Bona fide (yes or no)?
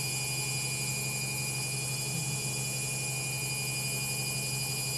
yes